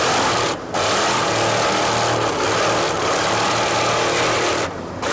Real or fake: real